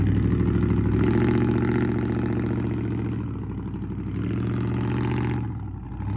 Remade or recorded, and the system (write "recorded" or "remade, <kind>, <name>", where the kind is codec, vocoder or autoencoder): recorded